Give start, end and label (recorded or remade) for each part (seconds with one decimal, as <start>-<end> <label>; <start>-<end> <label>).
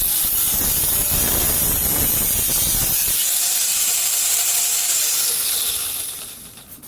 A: 0.0-3.7 recorded; 3.7-6.1 remade; 6.1-6.9 recorded